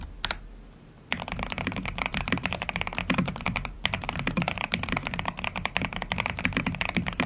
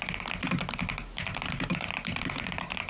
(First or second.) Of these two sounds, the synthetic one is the first